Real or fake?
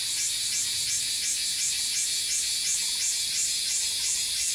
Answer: real